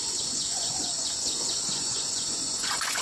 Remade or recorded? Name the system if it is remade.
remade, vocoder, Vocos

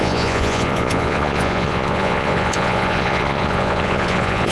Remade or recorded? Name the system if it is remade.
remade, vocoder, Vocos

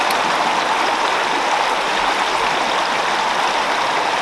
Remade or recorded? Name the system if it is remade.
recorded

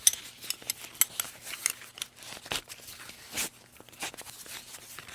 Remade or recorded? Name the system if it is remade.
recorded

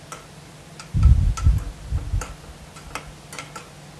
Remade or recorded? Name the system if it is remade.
recorded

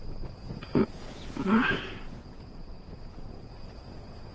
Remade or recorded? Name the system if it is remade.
remade, vocoder, Vocos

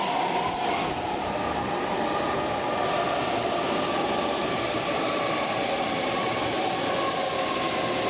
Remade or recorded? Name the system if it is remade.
recorded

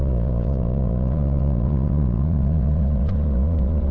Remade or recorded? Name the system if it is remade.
remade, vocoder, Vocos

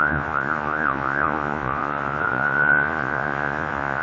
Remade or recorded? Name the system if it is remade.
remade, vocoder, Vocos